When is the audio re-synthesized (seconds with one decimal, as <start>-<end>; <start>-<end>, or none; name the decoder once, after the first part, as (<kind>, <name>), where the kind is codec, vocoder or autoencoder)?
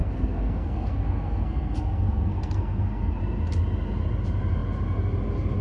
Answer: 0.0-3.2 (codec, SNAC)